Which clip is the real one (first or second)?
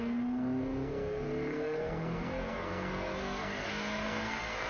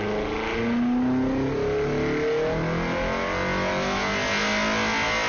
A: second